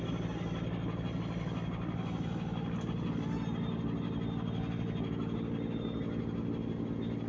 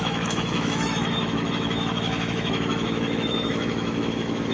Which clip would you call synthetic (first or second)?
second